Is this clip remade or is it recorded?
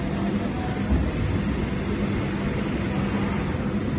recorded